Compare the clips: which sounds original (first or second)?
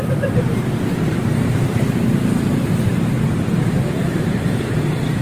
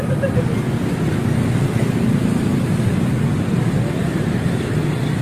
second